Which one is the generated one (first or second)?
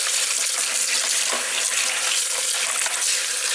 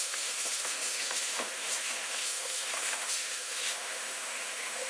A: second